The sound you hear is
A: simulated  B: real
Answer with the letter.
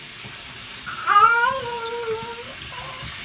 B